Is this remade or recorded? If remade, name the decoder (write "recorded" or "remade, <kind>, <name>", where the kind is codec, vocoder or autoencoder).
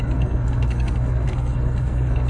remade, codec, SNAC